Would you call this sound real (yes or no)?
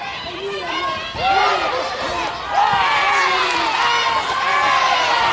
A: yes